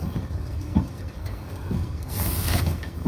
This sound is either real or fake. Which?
fake